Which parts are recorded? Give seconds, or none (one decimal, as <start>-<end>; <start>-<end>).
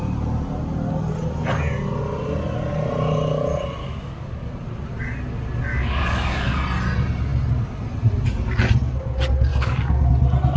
0.0-3.8; 4.5-5.7; 6.6-9.5; 10.1-10.6